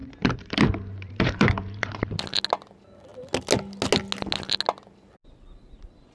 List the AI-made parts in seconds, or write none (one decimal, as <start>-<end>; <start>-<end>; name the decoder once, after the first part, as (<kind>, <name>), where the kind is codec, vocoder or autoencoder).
0.0-2.2 (vocoder, BigVGAN v2)